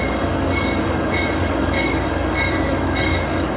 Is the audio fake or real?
fake